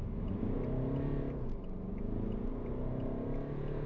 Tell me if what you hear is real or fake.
real